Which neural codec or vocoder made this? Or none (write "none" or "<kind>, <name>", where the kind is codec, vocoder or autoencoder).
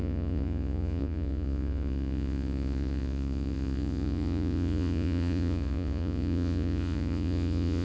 vocoder, Vocos